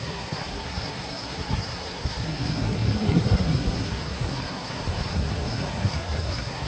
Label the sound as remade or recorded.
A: remade